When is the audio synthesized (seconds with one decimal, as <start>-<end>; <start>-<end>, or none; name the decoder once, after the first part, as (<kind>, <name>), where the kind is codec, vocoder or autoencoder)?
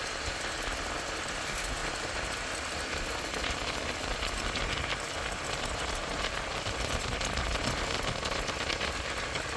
none